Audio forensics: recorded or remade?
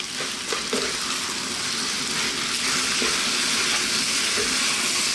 recorded